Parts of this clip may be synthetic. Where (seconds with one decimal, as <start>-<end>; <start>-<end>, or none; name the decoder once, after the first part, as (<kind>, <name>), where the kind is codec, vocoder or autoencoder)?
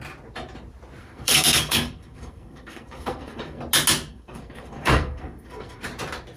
1.0-3.6 (codec, SNAC); 4.1-5.8